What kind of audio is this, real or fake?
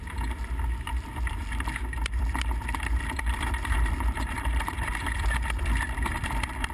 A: fake